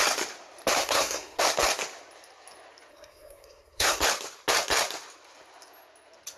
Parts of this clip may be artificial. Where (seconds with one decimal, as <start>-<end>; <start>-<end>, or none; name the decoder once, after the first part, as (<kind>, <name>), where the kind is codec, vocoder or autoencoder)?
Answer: 0.8-1.4 (codec, SNAC); 2.9-4.0